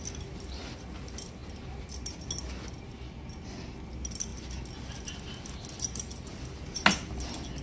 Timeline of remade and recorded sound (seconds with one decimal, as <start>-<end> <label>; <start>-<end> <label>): 0.0-7.6 recorded

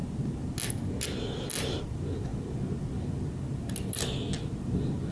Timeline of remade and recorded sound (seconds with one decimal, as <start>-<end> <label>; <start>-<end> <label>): 0.0-5.1 recorded